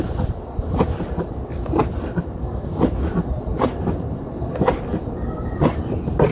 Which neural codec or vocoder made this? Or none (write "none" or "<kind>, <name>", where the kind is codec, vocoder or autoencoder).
none